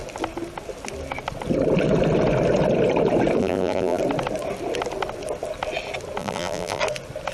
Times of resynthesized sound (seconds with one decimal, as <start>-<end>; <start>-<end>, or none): 3.4-4.0; 6.2-6.8